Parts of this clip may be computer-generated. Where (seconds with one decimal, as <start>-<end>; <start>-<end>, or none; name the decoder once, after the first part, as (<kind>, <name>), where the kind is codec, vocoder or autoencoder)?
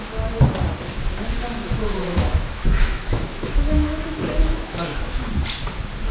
1.6-5.3 (autoencoder, DAC-VAE)